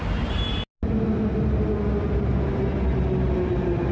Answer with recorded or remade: recorded